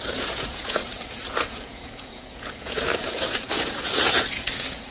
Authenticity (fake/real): fake